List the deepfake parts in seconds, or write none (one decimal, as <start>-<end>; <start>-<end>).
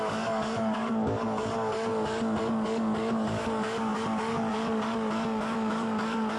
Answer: 0.0-1.9; 2.4-6.4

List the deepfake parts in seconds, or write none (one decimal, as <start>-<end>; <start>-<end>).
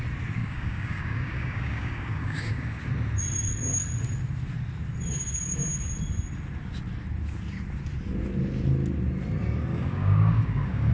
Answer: 0.4-2.8; 9.7-10.9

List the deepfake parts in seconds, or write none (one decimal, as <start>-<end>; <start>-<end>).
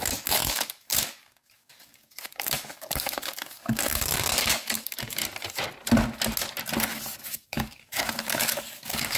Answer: 0.0-5.2; 7.2-9.2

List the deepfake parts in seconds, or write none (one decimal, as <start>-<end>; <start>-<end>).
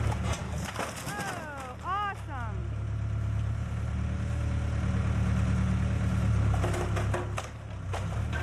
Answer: 0.4-0.9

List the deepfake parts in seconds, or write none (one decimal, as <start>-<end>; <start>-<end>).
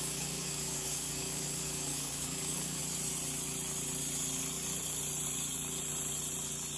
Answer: 0.0-2.8